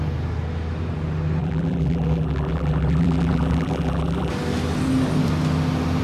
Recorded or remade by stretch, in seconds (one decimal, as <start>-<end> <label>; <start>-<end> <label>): 0.0-1.4 recorded; 1.4-4.3 remade; 4.3-6.0 recorded